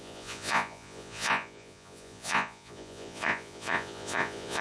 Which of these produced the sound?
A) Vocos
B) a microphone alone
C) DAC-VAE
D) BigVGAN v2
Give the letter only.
A